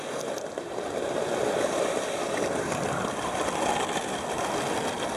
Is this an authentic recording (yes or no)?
yes